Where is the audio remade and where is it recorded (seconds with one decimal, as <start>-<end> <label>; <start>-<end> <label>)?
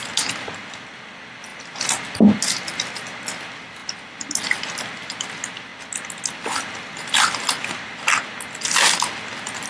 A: 0.0-9.7 recorded